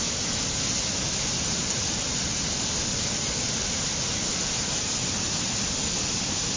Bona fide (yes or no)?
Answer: yes